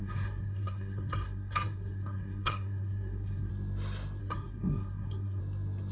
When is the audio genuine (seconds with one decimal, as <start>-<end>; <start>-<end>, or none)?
3.5-4.2; 5.4-5.9